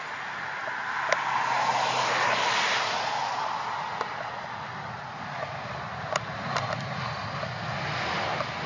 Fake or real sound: real